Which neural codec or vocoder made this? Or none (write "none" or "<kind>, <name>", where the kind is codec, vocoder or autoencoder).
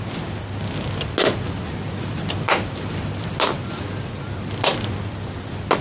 none